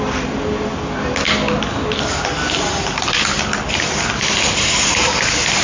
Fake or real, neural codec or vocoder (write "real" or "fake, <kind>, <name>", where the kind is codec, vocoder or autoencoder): real